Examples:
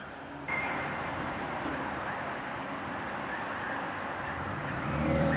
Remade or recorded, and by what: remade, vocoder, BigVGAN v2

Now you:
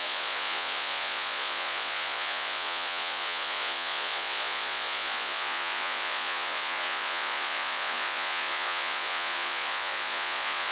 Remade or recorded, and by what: remade, vocoder, Vocos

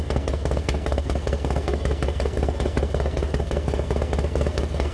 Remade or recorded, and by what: remade, codec, SNAC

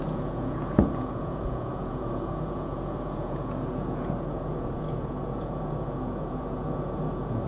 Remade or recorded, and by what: remade, vocoder, Vocos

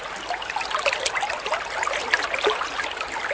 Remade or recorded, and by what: recorded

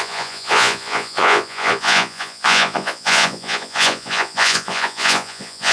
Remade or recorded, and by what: remade, vocoder, Vocos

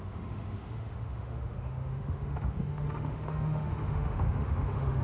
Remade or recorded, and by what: remade, autoencoder, DAC-VAE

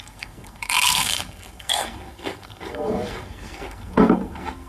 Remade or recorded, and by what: remade, codec, SNAC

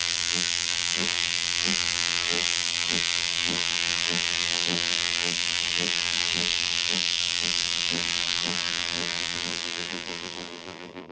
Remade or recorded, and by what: remade, vocoder, BigVGAN v2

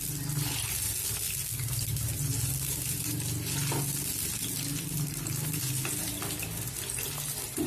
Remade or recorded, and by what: recorded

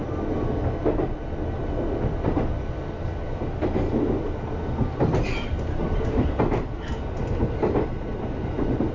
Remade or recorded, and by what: recorded